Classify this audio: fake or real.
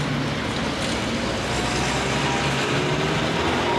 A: real